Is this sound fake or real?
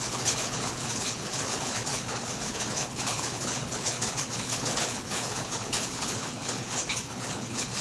fake